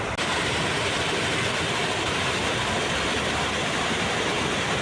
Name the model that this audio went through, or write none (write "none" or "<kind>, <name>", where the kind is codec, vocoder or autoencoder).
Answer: none